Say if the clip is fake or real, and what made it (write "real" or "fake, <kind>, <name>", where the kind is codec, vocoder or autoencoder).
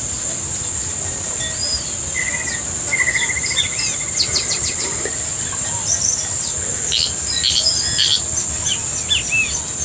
real